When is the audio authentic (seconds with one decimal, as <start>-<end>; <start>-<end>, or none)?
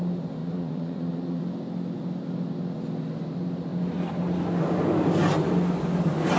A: 0.0-0.4; 1.4-6.4